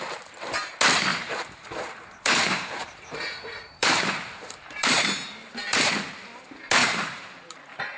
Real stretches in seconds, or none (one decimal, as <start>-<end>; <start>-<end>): 0.0-1.1; 5.9-6.8; 7.6-8.0